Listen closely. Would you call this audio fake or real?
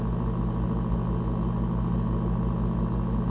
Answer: real